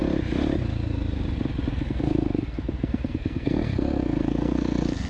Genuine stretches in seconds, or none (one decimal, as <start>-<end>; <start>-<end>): 0.0-1.7